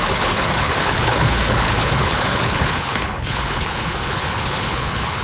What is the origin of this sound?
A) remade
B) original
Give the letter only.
A